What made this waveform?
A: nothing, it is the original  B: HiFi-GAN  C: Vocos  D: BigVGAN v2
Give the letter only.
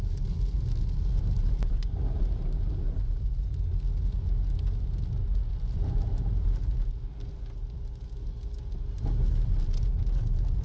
A